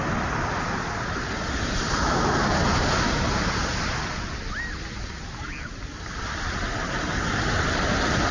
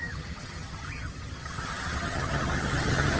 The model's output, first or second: second